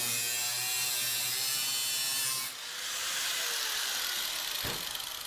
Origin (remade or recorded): recorded